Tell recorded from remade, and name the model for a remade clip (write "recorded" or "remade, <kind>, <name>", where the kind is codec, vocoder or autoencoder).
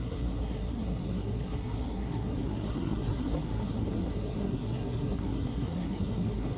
remade, codec, SNAC